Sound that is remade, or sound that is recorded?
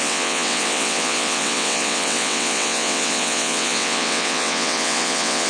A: remade